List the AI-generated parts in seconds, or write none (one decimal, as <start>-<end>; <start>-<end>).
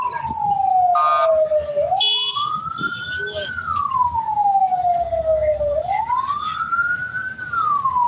none